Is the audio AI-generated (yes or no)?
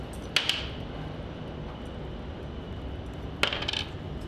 no